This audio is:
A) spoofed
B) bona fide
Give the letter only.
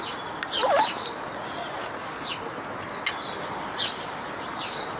B